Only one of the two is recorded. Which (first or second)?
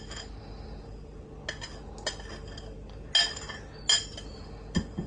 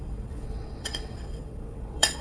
first